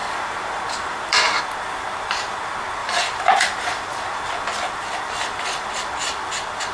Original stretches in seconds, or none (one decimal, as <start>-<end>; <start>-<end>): 1.4-2.8; 5.8-6.7